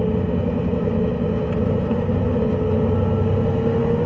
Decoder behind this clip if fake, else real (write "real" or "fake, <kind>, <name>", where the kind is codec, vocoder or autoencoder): real